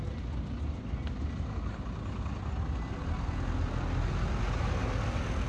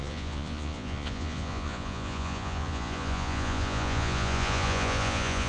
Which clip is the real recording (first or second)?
first